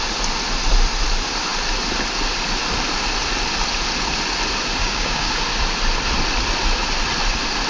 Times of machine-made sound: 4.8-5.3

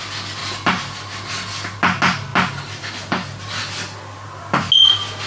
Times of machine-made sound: none

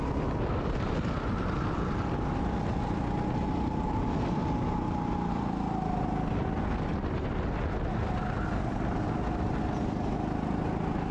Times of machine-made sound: none

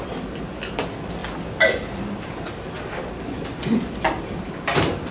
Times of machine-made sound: none